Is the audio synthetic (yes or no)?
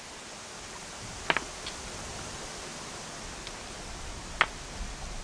no